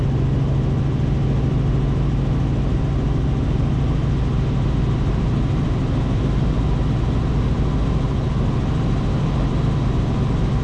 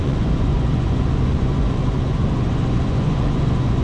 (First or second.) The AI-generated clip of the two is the second